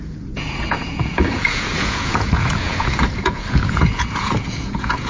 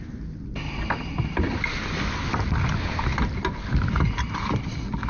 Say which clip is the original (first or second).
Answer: second